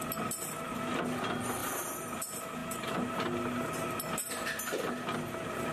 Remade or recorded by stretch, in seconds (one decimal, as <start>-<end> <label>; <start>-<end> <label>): 0.0-5.7 recorded